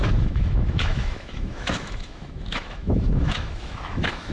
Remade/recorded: remade